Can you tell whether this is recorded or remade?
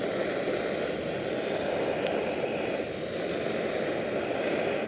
recorded